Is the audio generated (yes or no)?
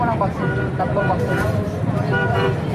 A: yes